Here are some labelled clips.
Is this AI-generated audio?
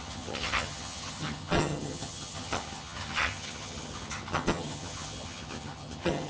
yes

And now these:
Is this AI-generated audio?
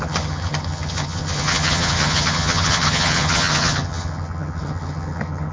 yes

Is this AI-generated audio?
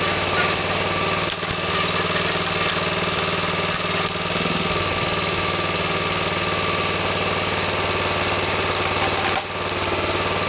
no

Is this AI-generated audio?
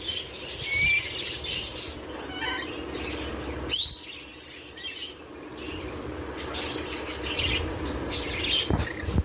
no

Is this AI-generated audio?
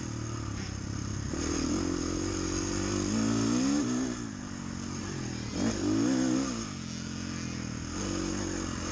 no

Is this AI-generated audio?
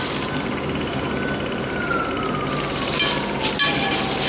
no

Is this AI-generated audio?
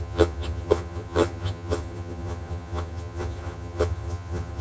yes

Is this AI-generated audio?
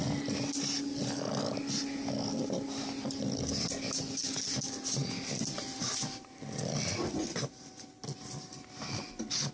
no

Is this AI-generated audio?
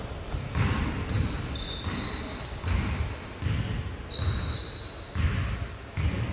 no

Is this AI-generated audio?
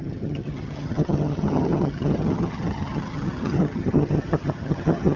yes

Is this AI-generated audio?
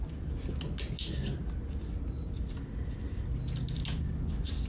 no